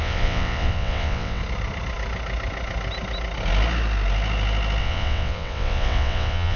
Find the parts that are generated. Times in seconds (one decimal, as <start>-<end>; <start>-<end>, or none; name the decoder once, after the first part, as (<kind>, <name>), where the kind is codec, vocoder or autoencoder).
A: 0.0-1.4 (vocoder, WaveNeXt); 4.8-6.6